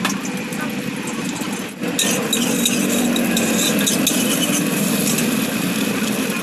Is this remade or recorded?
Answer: recorded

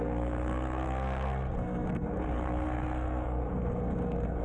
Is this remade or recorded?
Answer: remade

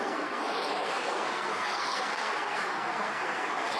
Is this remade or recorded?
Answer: remade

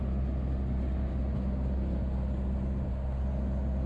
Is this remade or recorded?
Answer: recorded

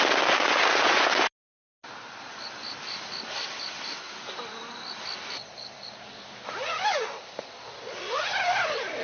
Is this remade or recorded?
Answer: recorded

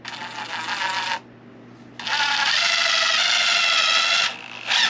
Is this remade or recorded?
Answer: recorded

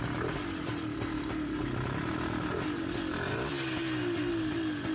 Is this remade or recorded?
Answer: recorded